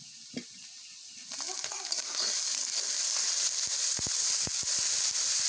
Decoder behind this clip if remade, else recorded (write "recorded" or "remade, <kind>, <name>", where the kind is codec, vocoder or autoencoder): recorded